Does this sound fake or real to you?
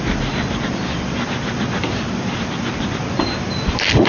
real